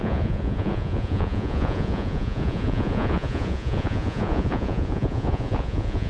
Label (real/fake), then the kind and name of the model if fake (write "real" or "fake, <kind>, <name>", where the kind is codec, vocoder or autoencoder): fake, vocoder, Vocos